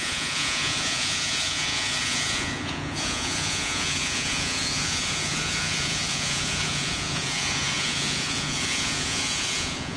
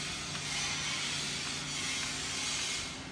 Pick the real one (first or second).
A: second